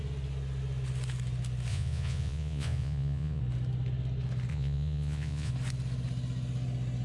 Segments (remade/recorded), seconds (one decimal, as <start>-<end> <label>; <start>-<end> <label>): 0.0-1.7 recorded; 1.7-3.4 remade; 3.4-4.5 recorded; 4.5-5.5 remade; 5.5-7.0 recorded